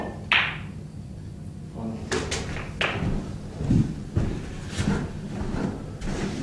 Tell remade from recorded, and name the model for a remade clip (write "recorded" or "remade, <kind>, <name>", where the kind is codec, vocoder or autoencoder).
recorded